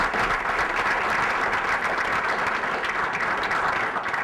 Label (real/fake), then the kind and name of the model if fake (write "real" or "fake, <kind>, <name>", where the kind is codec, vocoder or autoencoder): real